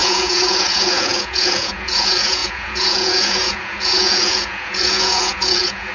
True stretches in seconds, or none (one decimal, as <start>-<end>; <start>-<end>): none